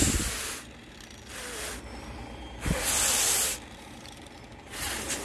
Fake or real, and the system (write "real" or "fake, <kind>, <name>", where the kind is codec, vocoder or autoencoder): real